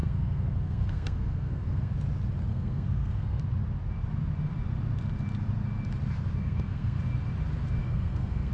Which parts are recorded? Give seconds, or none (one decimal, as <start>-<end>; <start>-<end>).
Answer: 1.9-2.5; 3.4-6.4; 7.0-7.8